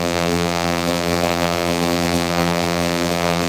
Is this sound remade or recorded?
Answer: remade